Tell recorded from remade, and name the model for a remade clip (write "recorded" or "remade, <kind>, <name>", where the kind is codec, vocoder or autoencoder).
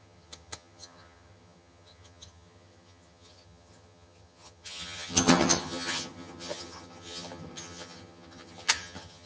remade, vocoder, HiFi-GAN